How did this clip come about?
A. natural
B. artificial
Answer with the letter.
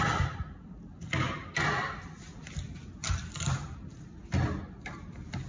A